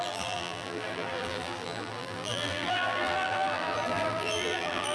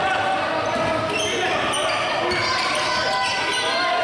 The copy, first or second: first